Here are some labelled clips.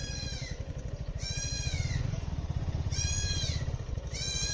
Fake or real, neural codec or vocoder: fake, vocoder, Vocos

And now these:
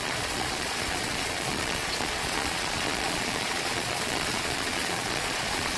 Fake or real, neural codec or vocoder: fake, vocoder, Vocos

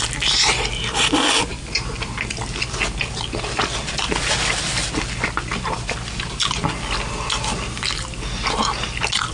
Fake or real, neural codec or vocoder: real